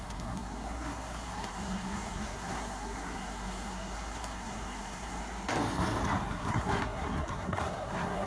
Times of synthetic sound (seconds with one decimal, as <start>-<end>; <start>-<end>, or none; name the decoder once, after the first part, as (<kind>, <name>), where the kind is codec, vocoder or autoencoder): 0.0-5.2 (codec, SNAC); 6.3-8.3